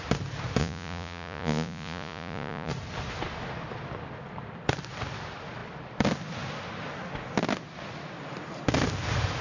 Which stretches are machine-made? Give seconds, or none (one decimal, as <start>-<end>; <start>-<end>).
0.6-2.7